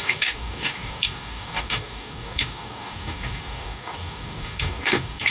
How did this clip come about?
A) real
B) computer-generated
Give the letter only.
B